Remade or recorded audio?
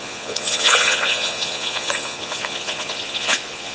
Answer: remade